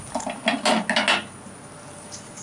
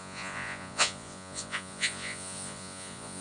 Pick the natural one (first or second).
first